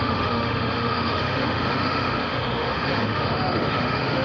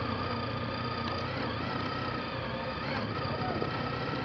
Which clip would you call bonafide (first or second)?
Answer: second